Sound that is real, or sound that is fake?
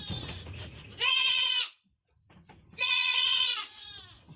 fake